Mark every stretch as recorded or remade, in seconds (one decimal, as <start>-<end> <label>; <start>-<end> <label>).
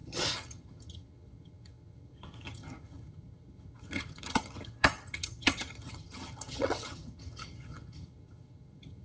0.0-9.0 remade